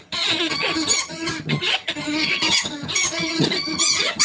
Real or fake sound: fake